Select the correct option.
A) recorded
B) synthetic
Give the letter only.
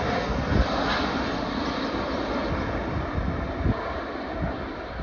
A